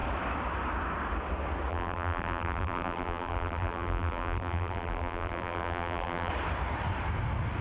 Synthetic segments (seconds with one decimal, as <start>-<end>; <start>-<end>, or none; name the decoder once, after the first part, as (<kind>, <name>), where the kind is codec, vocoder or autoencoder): 1.7-6.3 (vocoder, BigVGAN v2)